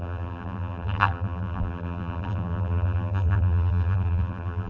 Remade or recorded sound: remade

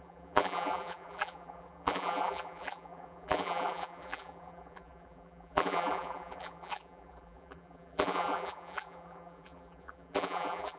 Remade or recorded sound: remade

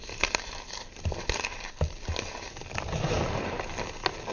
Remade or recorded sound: remade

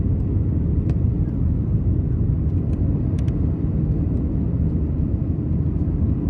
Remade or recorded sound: recorded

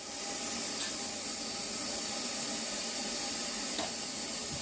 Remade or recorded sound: recorded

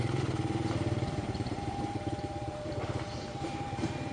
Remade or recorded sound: remade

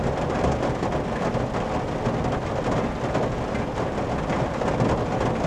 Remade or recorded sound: recorded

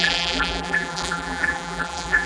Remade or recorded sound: remade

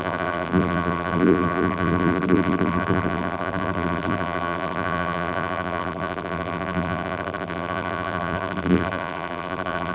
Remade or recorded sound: remade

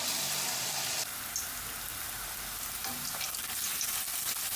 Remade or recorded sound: recorded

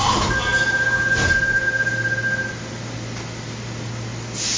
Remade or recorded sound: recorded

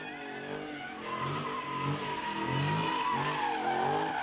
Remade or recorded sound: recorded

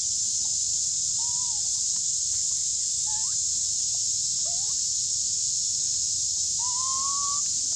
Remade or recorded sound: recorded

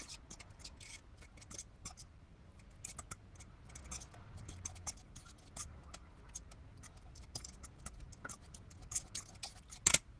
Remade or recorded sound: recorded